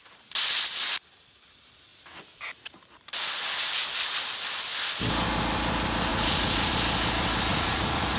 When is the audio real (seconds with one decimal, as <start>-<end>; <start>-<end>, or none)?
0.0-6.1; 6.7-7.5

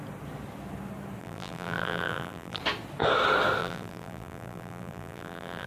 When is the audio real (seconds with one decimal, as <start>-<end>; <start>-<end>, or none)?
0.0-1.2; 2.6-3.6

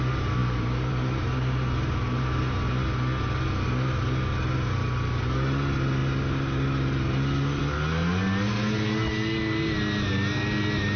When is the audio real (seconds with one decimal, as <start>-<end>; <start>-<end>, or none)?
0.0-0.4; 2.4-11.0

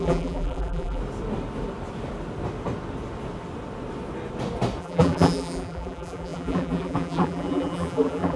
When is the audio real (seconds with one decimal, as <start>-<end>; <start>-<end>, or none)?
1.0-4.8

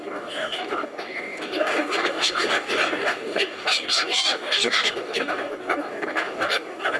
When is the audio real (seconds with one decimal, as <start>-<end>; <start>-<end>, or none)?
none

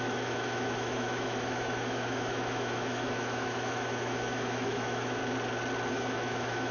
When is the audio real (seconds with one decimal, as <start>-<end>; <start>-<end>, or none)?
5.2-5.9